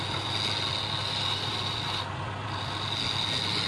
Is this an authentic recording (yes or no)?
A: yes